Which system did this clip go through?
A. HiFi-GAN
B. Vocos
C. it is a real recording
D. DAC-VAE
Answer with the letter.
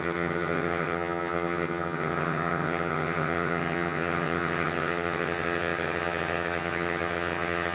A